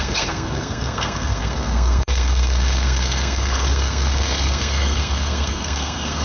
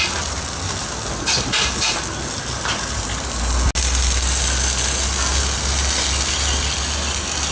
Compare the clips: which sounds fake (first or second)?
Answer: first